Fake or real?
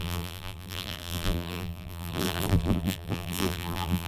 fake